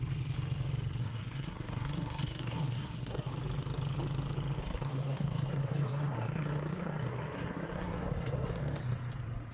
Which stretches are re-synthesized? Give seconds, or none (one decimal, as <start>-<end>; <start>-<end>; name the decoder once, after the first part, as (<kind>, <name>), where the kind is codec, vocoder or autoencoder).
1.0-3.3 (codec, SNAC); 4.6-8.6